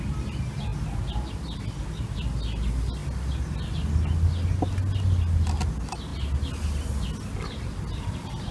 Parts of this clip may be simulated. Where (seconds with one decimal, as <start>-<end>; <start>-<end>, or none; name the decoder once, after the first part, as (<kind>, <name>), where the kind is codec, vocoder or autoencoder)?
none